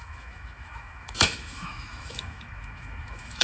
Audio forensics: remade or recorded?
remade